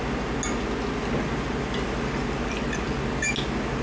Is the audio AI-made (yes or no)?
no